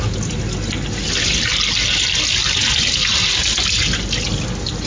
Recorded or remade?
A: recorded